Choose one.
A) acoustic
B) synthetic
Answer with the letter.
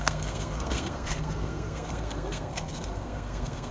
B